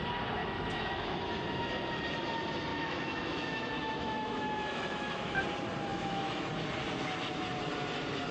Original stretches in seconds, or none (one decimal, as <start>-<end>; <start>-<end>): 0.0-0.4; 1.2-2.7; 5.4-5.9; 6.5-8.3